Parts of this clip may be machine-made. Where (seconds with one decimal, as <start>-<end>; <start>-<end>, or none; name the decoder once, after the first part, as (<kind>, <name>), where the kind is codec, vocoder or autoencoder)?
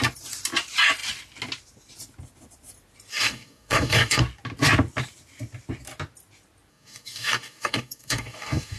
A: 3.1-4.2 (codec, DAC); 6.7-8.8